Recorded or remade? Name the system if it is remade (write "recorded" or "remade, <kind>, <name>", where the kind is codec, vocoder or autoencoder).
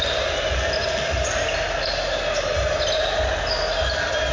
recorded